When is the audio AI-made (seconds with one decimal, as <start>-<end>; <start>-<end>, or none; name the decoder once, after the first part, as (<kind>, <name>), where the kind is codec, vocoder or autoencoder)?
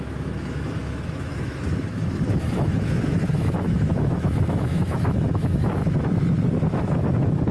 0.0-5.8 (autoencoder, DAC-VAE); 6.7-7.5